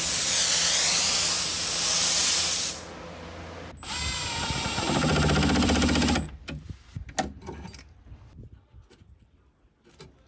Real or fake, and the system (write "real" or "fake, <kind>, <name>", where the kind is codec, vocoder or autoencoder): real